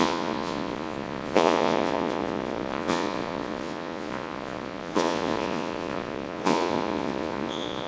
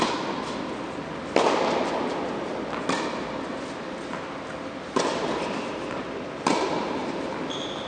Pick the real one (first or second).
second